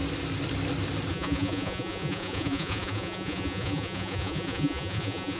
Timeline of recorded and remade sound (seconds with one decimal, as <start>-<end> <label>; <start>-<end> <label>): 0.0-1.1 recorded; 1.1-5.4 remade